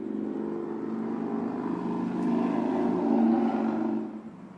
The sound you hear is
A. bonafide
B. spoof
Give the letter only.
A